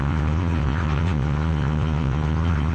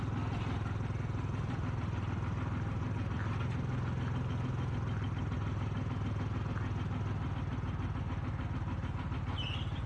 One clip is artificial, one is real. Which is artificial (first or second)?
first